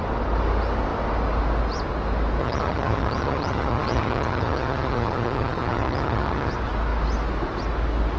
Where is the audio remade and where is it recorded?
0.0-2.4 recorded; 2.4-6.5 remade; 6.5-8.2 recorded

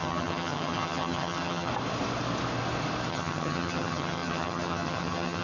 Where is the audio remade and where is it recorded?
0.0-1.7 remade; 1.7-3.1 recorded; 3.1-5.4 remade

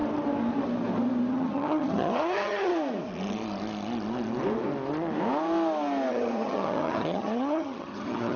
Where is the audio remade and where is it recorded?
0.0-1.3 recorded; 1.3-2.7 remade; 2.7-6.1 recorded; 6.1-8.4 remade

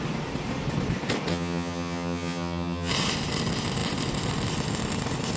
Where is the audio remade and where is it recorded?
0.0-1.3 recorded; 1.3-2.9 remade; 2.9-5.4 recorded

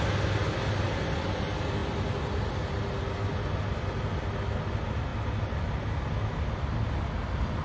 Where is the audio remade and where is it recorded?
0.0-7.6 recorded

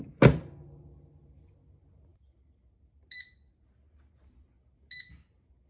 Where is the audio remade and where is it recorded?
0.0-5.7 recorded

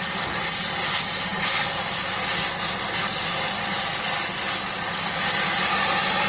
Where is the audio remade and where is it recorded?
0.0-6.3 recorded

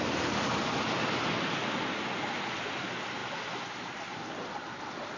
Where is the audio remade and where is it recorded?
0.0-5.2 recorded